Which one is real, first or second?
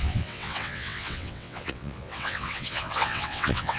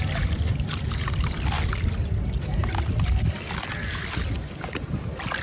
second